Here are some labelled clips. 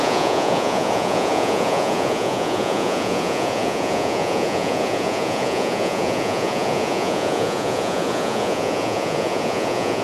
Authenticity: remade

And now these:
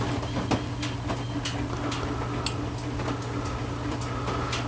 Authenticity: recorded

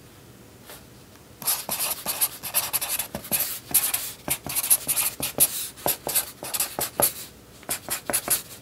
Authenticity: recorded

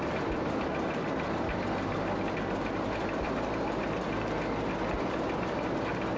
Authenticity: recorded